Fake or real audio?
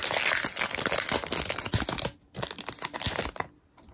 real